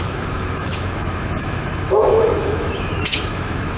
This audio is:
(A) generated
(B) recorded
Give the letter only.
A